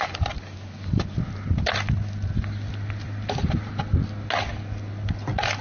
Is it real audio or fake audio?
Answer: real